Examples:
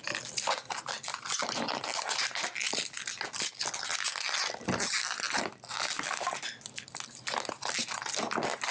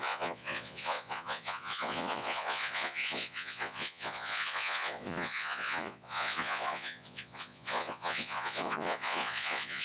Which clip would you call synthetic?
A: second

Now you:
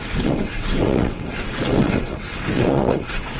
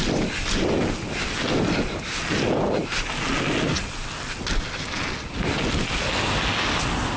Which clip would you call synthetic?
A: first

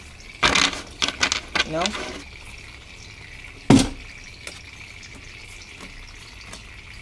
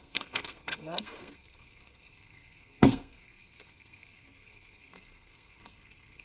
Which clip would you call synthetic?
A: second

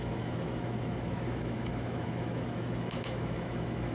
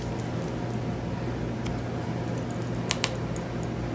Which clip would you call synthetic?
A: first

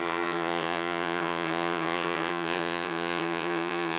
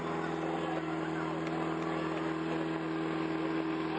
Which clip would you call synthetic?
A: first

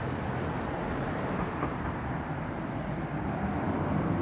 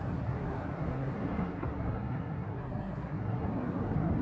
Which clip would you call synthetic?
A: second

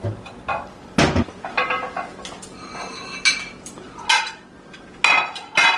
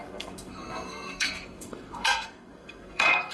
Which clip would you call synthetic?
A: second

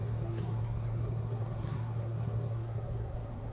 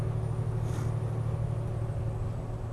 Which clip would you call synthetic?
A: first